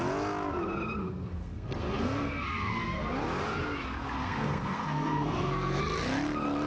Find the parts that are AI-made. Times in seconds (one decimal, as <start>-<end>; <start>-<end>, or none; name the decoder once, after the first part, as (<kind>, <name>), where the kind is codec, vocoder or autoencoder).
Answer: 1.0-3.1 (codec, SNAC); 4.2-5.8